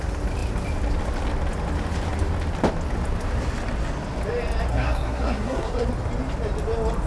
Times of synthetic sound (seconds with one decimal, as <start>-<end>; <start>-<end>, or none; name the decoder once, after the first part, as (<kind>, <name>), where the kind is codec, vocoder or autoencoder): 4.7-5.9 (codec, SNAC)